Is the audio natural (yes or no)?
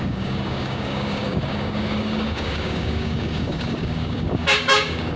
no